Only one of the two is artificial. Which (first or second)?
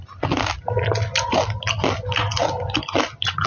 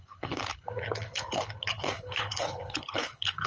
second